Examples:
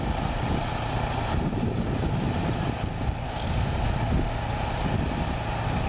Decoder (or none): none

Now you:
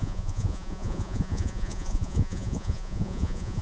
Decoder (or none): vocoder, Vocos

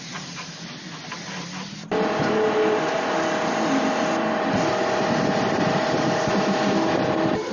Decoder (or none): none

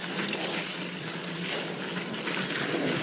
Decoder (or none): none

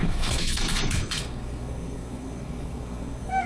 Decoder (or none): codec, SNAC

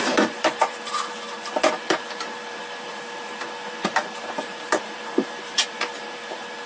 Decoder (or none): vocoder, BigVGAN v2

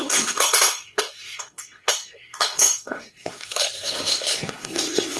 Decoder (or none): codec, SNAC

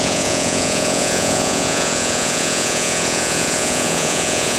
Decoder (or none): vocoder, Vocos